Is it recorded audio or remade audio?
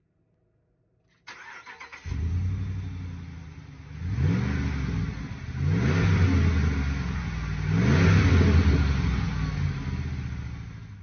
recorded